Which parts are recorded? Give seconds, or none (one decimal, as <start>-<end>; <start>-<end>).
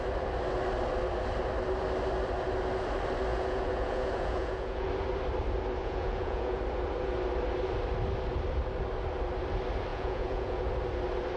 0.0-3.3; 4.9-5.8; 6.6-9.9; 10.7-11.4